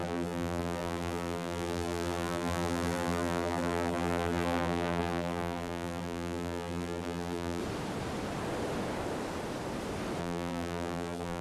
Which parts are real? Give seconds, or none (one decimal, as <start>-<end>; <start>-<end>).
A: 7.6-10.2